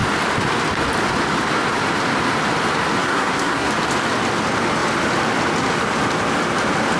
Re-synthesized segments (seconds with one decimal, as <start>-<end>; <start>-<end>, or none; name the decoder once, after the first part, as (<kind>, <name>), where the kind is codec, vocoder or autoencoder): 3.0-3.7 (codec, SNAC)